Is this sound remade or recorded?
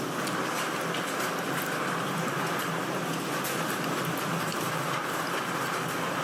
recorded